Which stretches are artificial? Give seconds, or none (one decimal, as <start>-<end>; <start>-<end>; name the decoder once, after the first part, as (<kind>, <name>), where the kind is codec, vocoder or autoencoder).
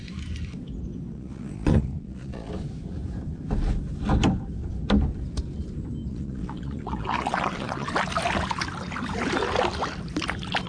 1.1-2.5 (vocoder, Vocos); 6.1-7.9